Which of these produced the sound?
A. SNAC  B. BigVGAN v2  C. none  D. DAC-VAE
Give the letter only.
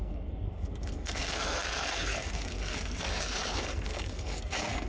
A